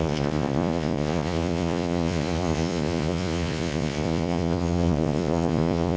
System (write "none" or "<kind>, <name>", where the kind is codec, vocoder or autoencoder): vocoder, Vocos